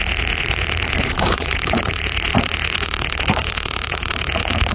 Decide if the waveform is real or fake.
fake